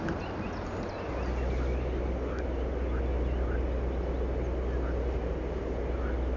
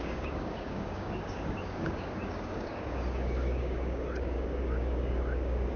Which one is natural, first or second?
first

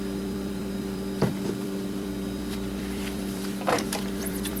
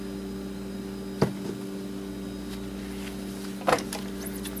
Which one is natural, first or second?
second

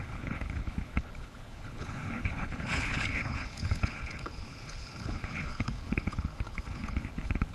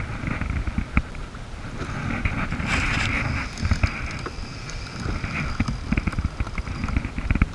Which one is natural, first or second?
second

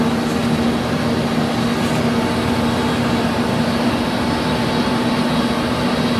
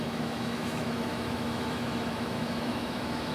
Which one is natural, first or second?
first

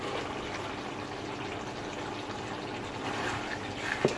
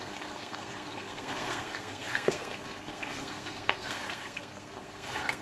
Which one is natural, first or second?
first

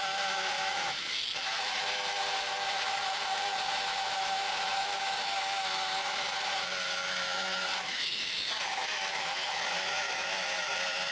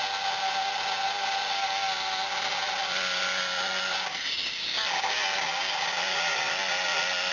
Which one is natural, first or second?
second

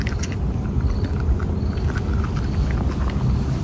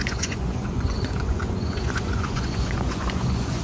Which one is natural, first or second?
first